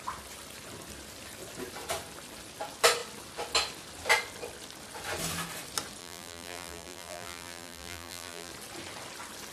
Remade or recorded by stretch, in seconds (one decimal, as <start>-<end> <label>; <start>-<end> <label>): 0.0-6.0 recorded; 6.0-8.5 remade; 8.5-9.5 recorded